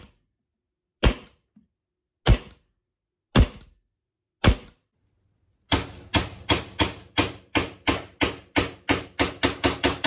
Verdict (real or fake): real